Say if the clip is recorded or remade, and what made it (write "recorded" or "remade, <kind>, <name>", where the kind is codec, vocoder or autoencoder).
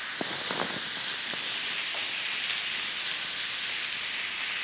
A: recorded